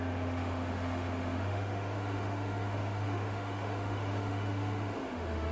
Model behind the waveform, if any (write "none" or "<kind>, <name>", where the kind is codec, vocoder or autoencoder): autoencoder, DAC-VAE